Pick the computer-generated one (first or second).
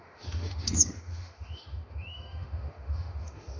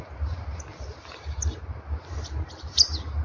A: first